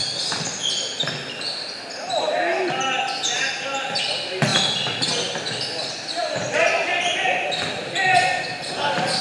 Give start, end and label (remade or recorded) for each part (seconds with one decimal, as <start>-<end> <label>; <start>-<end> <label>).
0.0-9.2 recorded